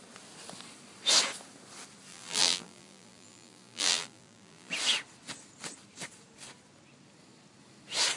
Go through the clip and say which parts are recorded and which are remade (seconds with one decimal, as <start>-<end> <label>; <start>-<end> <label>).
0.0-2.1 recorded; 2.1-4.7 remade; 4.7-8.2 recorded